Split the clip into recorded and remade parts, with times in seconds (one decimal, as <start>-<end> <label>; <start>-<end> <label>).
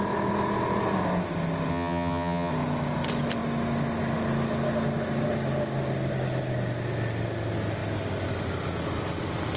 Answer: 0.0-1.7 recorded; 1.7-2.5 remade; 2.5-9.6 recorded